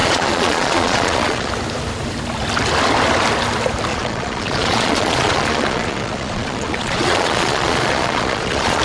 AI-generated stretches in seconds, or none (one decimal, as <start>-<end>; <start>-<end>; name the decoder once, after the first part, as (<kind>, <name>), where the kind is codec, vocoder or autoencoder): 0.0-1.5 (vocoder, Vocos); 3.9-8.8

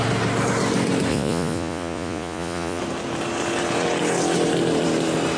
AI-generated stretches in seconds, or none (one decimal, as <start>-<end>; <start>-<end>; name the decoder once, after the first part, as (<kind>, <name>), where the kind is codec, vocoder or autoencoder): 1.1-2.8 (vocoder, Vocos)

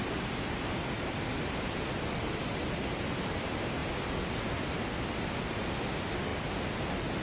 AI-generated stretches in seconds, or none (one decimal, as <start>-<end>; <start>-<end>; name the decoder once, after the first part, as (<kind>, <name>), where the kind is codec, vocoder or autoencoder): none

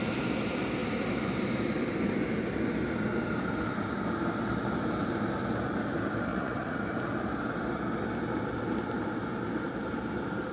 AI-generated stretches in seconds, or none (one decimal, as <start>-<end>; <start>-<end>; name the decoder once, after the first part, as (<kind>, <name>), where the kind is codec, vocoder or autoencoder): 6.3-6.8 (vocoder, Vocos)

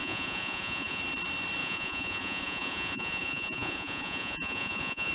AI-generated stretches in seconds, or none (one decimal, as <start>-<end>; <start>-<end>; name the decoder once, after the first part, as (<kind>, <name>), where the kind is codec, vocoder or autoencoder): 0.0-1.0 (vocoder, Vocos); 1.6-5.1

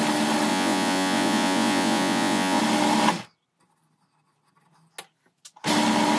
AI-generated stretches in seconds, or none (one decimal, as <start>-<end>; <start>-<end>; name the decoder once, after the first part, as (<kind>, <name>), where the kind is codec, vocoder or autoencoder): 0.5-2.6 (vocoder, Vocos)